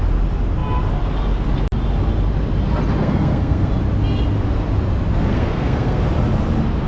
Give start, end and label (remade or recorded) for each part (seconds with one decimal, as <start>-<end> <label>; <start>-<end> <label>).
0.0-3.0 recorded; 3.0-3.7 remade; 3.7-5.3 recorded; 5.3-6.0 remade; 6.0-6.9 recorded